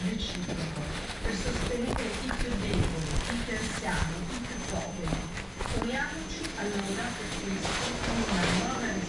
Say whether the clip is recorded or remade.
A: recorded